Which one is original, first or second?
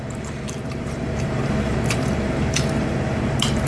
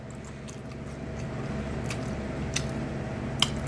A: second